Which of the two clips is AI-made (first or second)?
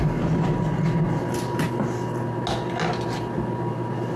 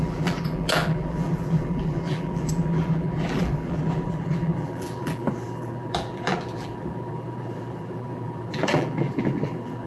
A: second